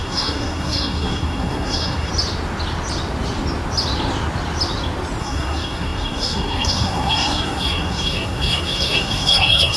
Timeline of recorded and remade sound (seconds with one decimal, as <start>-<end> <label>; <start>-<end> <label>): 0.0-2.1 remade; 2.1-5.2 recorded; 5.2-9.8 remade